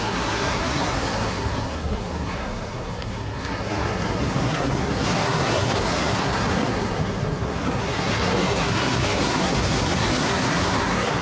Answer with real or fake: fake